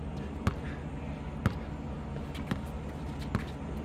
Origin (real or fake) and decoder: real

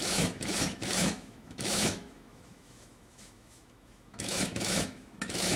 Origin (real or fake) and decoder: fake, autoencoder, DAC-VAE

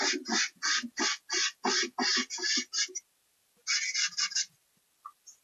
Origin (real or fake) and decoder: real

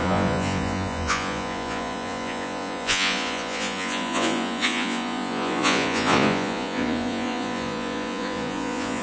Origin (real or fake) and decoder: fake, vocoder, Vocos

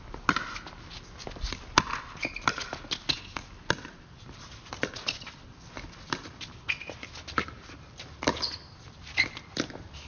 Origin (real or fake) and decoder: real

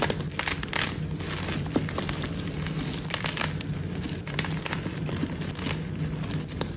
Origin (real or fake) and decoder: real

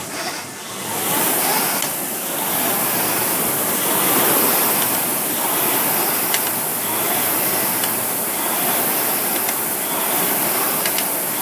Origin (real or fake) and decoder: real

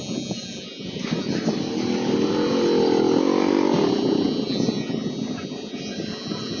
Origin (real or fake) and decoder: real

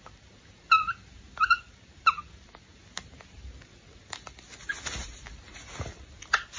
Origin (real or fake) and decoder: real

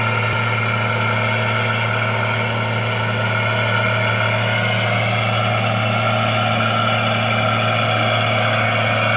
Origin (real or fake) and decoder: real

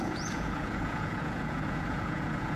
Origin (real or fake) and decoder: fake, vocoder, Vocos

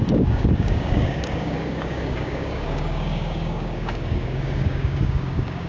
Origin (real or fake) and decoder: fake, codec, DAC